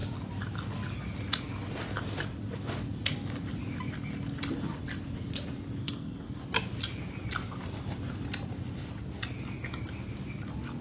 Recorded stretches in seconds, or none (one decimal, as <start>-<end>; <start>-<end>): 0.0-5.8; 6.4-10.8